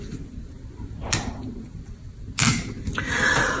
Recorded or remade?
recorded